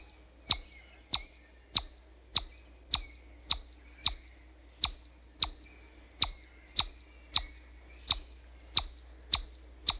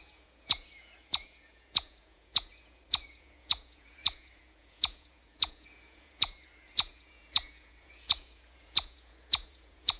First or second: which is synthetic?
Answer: second